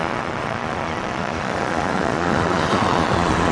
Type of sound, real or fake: fake